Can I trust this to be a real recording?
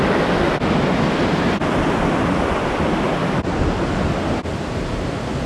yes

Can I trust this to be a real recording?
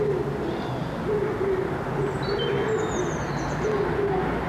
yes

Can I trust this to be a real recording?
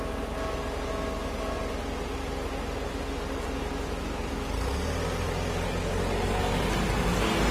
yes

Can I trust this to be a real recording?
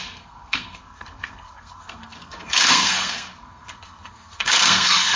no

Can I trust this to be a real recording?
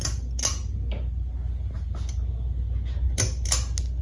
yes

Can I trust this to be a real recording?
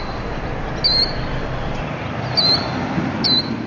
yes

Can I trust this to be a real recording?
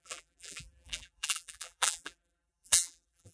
no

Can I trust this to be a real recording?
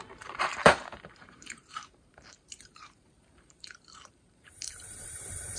no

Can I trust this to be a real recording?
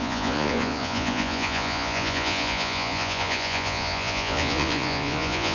no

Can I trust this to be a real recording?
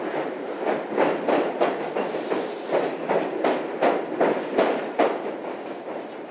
no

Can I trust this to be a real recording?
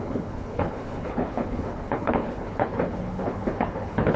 no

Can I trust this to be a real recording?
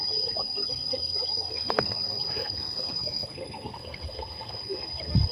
no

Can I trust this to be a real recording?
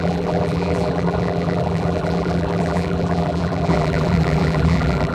no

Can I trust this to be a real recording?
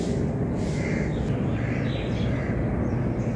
yes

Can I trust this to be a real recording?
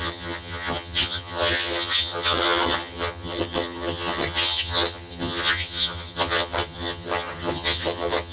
no